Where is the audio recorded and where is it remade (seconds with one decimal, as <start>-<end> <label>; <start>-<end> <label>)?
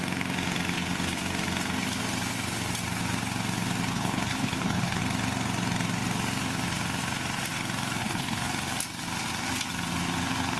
0.0-3.9 recorded; 3.9-5.0 remade; 5.0-8.0 recorded; 8.0-8.5 remade; 8.5-10.6 recorded